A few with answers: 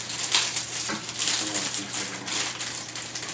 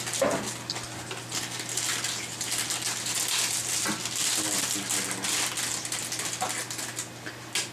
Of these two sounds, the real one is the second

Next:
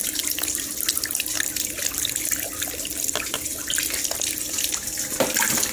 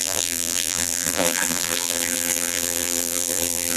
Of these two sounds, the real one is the first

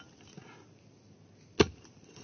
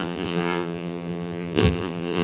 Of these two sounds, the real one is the first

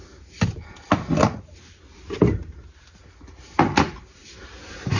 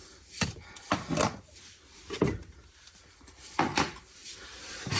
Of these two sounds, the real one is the first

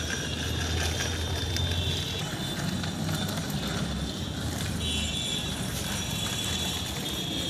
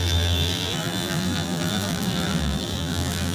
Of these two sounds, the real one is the first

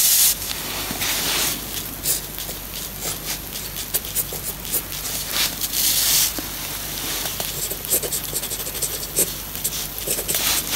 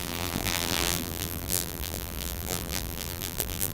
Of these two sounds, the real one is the first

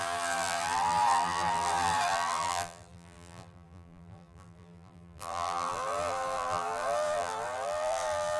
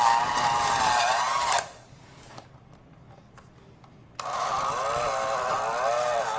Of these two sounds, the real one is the second